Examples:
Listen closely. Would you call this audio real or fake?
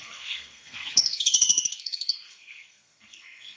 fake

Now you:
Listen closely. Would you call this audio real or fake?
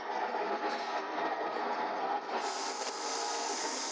fake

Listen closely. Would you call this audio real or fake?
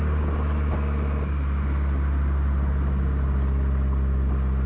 real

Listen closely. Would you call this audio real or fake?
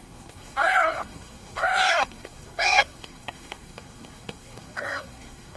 fake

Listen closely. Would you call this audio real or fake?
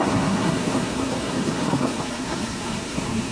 fake